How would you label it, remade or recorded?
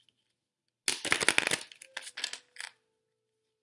recorded